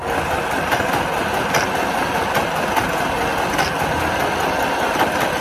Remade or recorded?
recorded